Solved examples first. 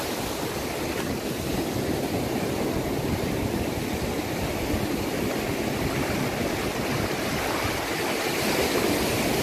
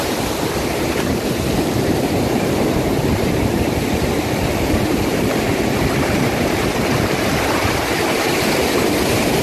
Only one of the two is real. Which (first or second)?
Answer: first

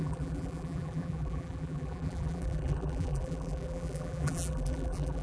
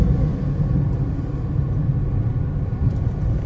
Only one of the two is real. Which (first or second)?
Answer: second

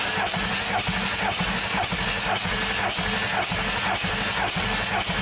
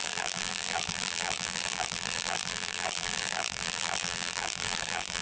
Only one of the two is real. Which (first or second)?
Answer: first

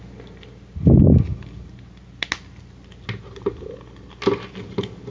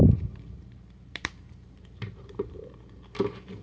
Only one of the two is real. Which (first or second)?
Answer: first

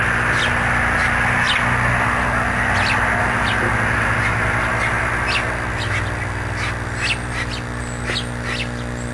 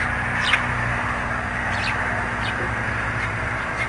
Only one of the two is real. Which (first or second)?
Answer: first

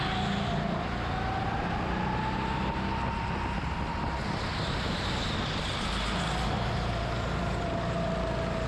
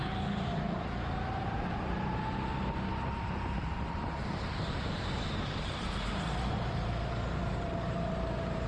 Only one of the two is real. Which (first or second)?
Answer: first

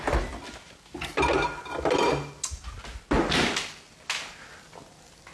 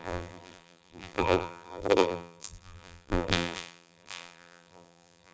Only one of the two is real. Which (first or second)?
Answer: first